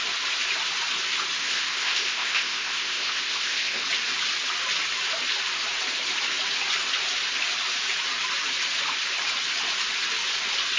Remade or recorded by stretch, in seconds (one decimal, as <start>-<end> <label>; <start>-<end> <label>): 0.0-1.4 recorded; 1.4-3.9 remade; 3.9-10.8 recorded